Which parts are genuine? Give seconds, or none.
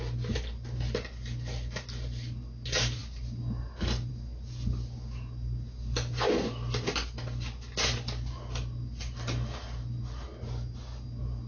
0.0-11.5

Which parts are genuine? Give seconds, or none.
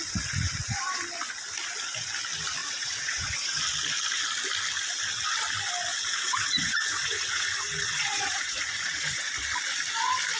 0.0-2.6; 3.6-5.9; 9.3-10.4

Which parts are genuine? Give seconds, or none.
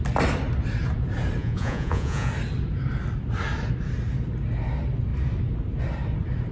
0.0-1.4; 2.3-6.5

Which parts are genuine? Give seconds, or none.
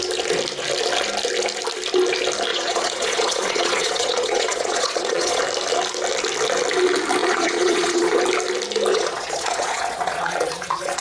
0.0-2.5; 5.4-7.2; 8.2-8.9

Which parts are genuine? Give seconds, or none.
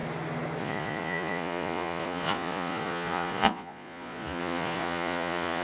0.0-0.6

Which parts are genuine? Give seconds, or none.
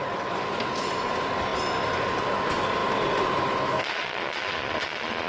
0.0-3.8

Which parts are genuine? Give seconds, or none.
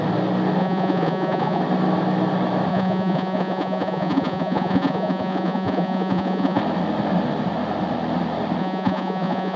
0.0-0.6; 1.6-2.7; 6.6-8.6